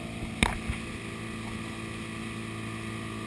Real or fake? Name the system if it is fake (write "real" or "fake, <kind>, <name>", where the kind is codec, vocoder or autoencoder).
real